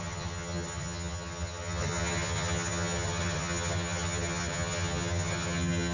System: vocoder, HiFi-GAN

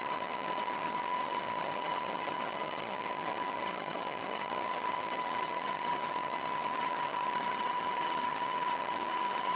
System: vocoder, HiFi-GAN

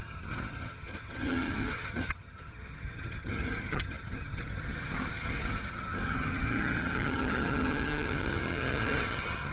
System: vocoder, HiFi-GAN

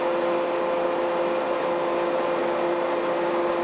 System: none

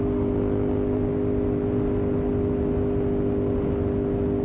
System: none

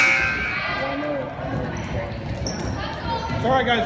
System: none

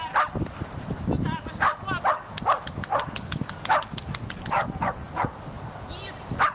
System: none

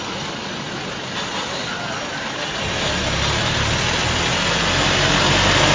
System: none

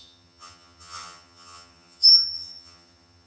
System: vocoder, HiFi-GAN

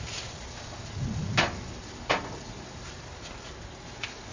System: none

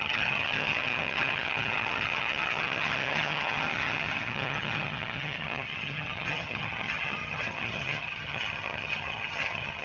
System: vocoder, HiFi-GAN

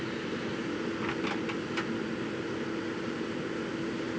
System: none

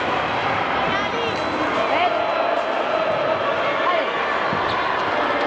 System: none